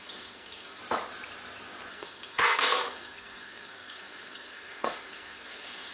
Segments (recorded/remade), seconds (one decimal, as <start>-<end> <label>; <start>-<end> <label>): 0.0-0.8 remade; 0.8-1.9 recorded; 1.9-5.9 remade